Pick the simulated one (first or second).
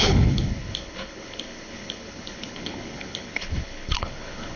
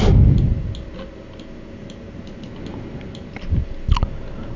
first